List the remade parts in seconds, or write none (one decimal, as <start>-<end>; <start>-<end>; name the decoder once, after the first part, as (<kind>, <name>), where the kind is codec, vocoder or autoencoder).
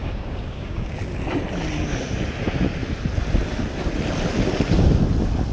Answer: 0.0-1.1 (codec, DAC)